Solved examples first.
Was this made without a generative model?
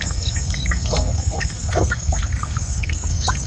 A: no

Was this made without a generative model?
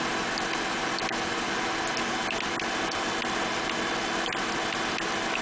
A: yes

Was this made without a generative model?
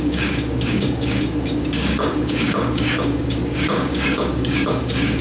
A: no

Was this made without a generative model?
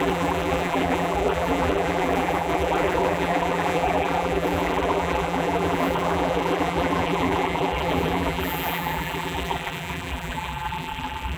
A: no